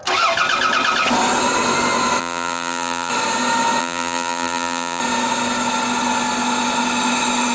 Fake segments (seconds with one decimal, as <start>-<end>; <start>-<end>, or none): 2.2-3.1; 3.8-5.0